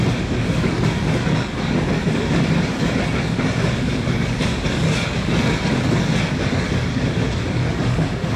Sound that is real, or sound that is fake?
fake